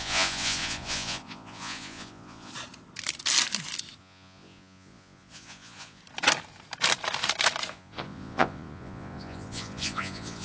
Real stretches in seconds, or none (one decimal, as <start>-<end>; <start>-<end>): 2.5-4.0; 6.0-7.7